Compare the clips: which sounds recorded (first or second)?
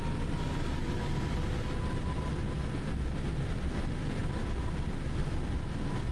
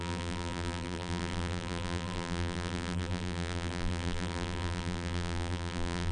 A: first